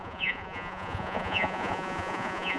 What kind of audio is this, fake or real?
fake